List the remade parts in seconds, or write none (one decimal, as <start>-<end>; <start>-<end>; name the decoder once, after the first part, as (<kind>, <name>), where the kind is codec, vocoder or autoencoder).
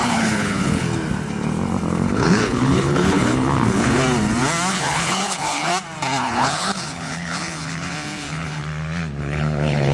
0.0-0.9 (codec, HILCodec); 1.9-4.0; 4.7-5.7; 6.2-8.6; 9.2-9.9